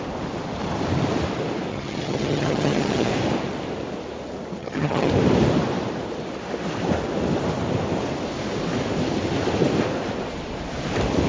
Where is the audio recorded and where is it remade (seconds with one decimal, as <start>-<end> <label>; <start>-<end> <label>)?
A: 0.0-1.7 recorded; 1.7-3.1 remade; 3.1-4.6 recorded; 4.6-5.1 remade; 5.1-11.3 recorded